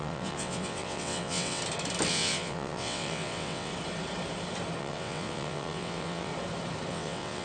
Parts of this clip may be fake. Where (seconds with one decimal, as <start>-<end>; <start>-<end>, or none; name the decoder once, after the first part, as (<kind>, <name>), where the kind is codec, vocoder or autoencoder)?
0.0-1.6 (vocoder, WaveNeXt); 2.1-3.7; 4.8-6.3; 6.9-7.4